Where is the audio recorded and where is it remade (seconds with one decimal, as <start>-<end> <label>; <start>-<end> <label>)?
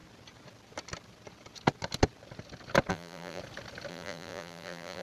0.0-2.9 recorded; 2.9-3.4 remade; 3.4-3.9 recorded; 3.9-5.0 remade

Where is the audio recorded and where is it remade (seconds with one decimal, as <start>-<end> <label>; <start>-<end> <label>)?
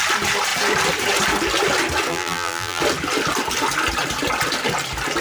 0.0-2.1 recorded; 2.1-2.8 remade; 2.8-5.2 recorded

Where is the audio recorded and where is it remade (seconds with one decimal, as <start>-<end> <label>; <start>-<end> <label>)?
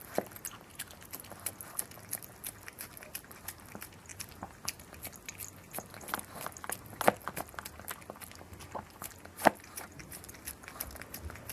0.0-9.4 recorded; 9.4-10.3 remade; 10.3-11.5 recorded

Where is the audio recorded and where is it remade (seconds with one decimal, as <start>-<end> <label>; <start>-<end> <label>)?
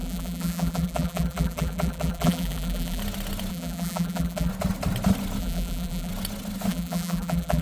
0.0-3.0 remade; 3.0-3.5 recorded; 3.5-4.5 remade; 4.5-5.4 recorded; 5.4-6.1 remade; 6.1-6.7 recorded; 6.7-7.6 remade